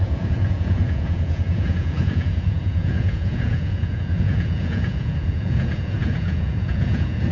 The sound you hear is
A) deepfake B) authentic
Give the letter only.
A